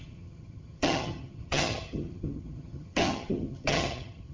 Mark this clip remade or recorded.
remade